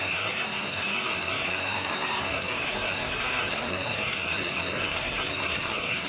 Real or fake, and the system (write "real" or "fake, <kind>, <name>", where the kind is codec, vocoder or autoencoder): fake, codec, SNAC